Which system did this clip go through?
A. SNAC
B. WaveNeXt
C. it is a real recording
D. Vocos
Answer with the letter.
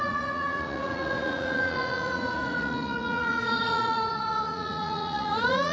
D